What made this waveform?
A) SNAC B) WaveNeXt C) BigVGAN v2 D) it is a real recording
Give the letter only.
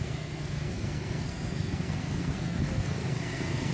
A